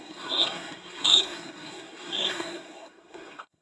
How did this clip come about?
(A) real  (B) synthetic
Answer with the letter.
B